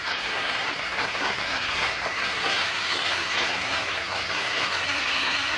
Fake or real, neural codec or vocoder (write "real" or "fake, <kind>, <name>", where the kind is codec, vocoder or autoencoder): fake, codec, SNAC